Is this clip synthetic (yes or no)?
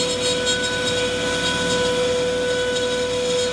no